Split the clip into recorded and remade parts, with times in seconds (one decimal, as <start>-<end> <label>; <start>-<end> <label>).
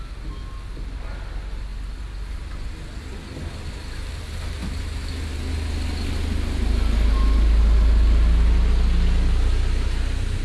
0.0-10.4 recorded